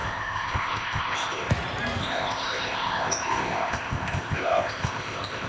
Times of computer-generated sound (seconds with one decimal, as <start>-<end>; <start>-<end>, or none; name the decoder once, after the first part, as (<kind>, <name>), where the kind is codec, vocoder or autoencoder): 0.0-1.5 (codec, ZipCodec); 2.0-5.5